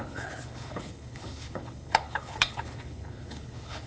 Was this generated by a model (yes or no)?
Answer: yes